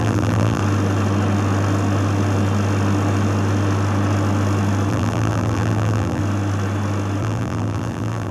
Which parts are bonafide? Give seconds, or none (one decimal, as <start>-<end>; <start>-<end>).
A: 0.6-4.9; 6.2-7.2